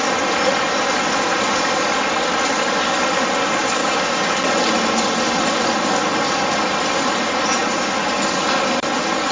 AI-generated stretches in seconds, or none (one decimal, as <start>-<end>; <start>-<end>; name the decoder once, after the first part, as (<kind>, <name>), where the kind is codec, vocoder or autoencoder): 3.8-4.3 (codec, DAC)

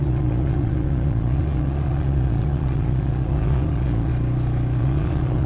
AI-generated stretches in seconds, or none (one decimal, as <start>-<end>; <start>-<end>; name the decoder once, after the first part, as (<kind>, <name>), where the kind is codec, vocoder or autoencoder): 0.0-4.1 (vocoder, Vocos); 4.8-5.5

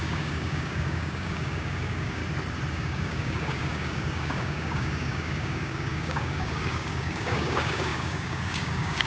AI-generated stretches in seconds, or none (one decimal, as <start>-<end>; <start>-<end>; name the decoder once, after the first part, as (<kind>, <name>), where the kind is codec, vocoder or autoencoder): 0.0-2.2 (codec, DAC); 2.7-9.1

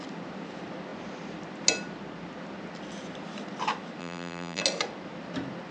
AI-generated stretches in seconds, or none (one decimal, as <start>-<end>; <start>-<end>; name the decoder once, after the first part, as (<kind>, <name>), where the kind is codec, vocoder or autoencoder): 4.0-4.6 (vocoder, BigVGAN v2)

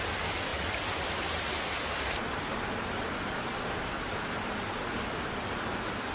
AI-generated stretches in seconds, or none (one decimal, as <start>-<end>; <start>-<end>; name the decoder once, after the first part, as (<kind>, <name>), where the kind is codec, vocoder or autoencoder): 0.5-2.6 (vocoder, BigVGAN v2)

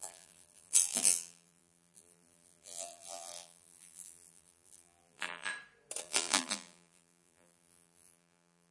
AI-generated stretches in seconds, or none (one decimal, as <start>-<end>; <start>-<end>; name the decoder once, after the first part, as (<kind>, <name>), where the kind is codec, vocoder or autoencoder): 0.0-5.5 (vocoder, BigVGAN v2); 6.0-8.7

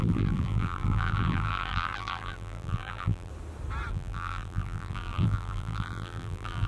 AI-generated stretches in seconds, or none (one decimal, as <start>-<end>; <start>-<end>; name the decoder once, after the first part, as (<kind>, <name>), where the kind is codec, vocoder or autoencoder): 0.0-3.3 (vocoder, BigVGAN v2); 3.9-6.7